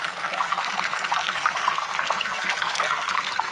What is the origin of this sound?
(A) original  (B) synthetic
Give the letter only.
B